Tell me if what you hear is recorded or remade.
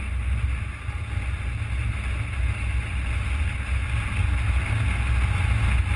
recorded